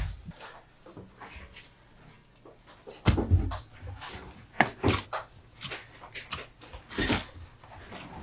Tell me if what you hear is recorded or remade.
recorded